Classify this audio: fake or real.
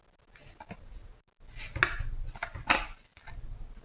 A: real